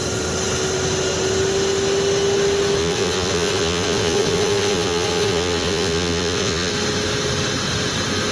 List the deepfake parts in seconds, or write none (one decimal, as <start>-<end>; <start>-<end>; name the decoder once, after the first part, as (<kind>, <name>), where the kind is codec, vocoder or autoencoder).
2.8-6.7 (vocoder, Vocos)